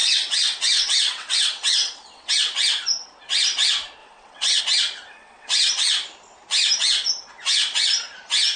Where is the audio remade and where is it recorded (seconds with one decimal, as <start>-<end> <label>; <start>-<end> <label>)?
0.0-2.3 remade; 2.3-4.0 recorded; 4.0-4.6 remade; 4.6-5.1 recorded; 5.1-5.7 remade; 5.7-8.6 recorded